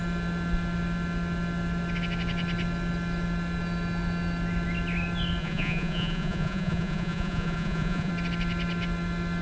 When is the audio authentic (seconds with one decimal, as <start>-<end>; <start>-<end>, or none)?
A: 0.0-5.4; 8.1-9.4